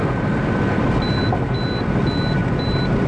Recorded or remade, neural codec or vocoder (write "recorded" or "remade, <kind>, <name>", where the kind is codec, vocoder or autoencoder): recorded